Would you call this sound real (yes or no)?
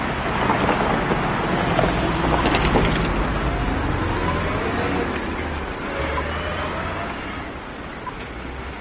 yes